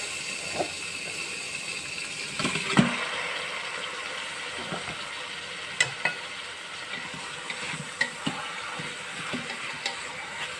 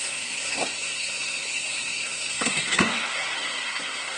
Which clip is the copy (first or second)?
second